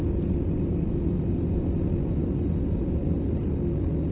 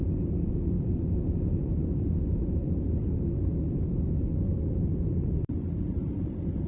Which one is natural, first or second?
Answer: first